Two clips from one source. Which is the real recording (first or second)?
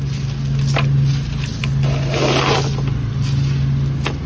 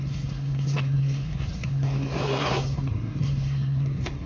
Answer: first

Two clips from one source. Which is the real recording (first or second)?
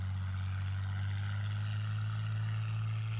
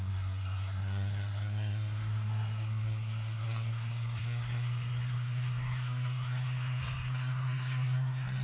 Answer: first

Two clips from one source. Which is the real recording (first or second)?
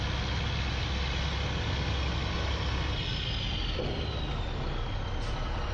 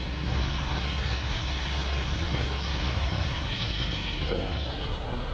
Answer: first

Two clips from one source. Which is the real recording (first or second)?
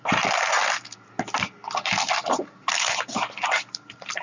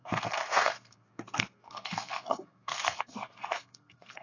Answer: first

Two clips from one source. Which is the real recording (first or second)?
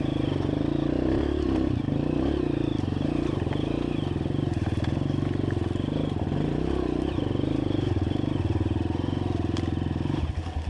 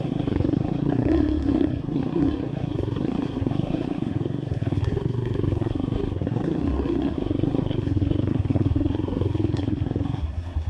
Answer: first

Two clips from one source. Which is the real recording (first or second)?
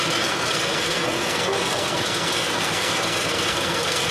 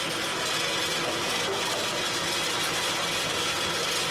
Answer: second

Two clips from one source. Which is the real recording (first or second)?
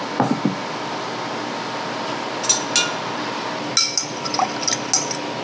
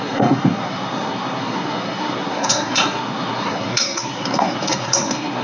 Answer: first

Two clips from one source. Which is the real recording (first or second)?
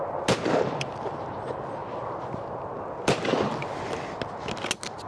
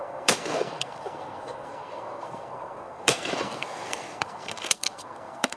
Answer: first